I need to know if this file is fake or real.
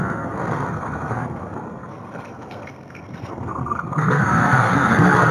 fake